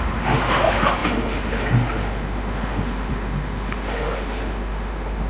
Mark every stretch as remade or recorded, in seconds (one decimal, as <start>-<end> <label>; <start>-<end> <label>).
0.0-5.3 remade